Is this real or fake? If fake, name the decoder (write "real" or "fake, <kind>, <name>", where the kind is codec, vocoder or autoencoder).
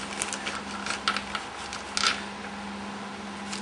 real